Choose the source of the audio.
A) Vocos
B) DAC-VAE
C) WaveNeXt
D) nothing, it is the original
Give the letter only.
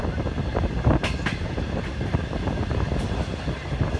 D